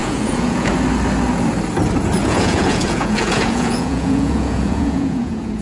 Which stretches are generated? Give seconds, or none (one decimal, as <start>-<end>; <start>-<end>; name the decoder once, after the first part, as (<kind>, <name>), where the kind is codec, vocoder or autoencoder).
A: 0.0-0.7 (vocoder, Vocos); 2.2-5.6